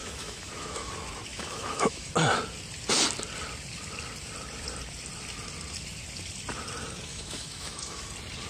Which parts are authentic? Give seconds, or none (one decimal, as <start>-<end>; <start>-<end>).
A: 0.9-1.3; 2.1-7.1; 8.1-8.5